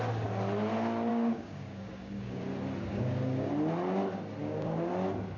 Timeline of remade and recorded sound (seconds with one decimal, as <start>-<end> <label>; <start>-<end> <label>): 0.0-1.1 recorded; 1.1-2.4 remade; 2.4-2.9 recorded; 2.9-3.5 remade; 3.5-4.4 recorded; 4.4-4.9 remade; 4.9-5.4 recorded